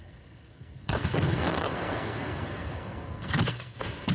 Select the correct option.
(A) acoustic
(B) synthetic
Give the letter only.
B